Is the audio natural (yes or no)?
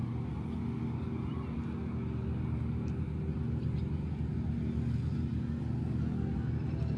yes